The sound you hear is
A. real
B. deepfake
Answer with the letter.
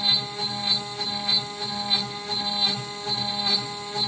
A